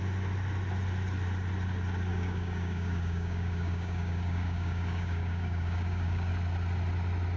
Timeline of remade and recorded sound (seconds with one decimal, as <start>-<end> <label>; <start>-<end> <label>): 0.0-2.1 recorded; 2.1-6.3 remade; 6.3-7.4 recorded